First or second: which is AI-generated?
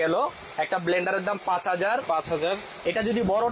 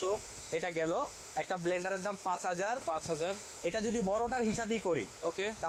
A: second